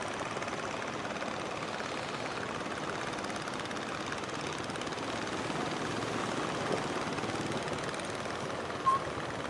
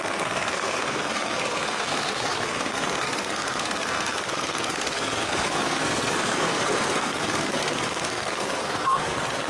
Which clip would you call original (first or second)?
first